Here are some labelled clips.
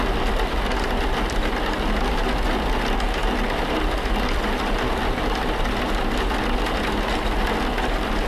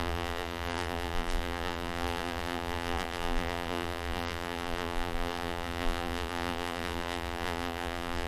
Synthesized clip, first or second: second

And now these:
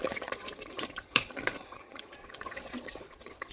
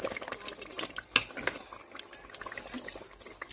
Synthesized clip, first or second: first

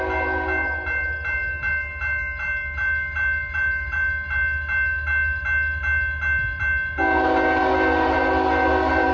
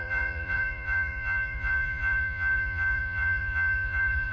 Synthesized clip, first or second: second